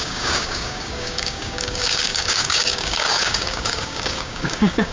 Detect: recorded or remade remade